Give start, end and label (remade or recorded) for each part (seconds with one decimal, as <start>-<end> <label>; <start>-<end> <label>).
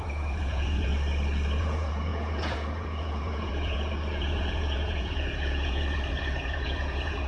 0.0-0.9 remade; 0.9-1.6 recorded; 1.6-7.3 remade